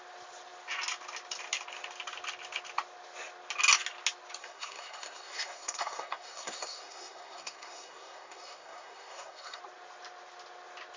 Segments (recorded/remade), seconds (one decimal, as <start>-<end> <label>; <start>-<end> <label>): 0.0-4.4 recorded; 4.4-9.6 remade; 9.6-11.0 recorded